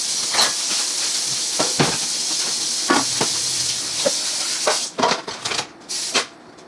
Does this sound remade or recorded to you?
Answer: recorded